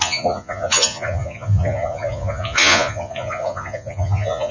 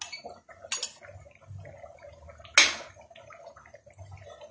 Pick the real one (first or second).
second